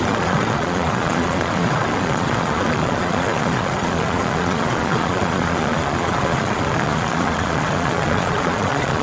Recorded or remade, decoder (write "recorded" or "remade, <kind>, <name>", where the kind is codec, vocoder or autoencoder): remade, vocoder, Vocos